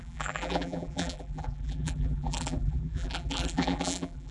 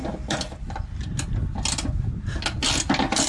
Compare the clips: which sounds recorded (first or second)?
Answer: second